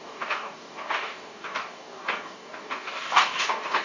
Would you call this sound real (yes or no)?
no